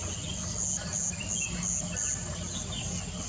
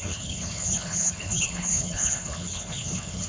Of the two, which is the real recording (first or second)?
first